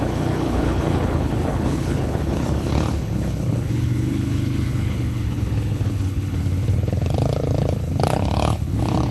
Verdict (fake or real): fake